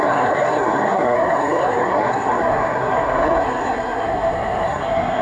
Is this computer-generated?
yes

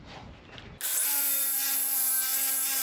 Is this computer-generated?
no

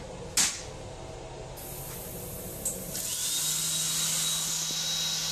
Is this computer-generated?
no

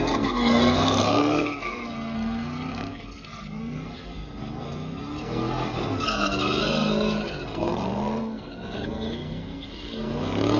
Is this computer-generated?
yes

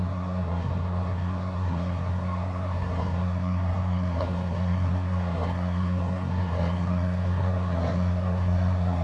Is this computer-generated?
yes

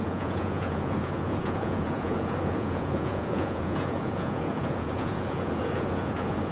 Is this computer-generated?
yes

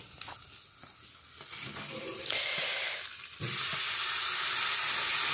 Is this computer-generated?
no